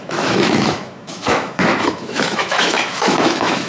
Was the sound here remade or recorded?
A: remade